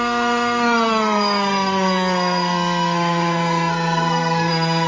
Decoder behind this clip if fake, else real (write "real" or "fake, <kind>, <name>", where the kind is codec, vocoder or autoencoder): fake, codec, SNAC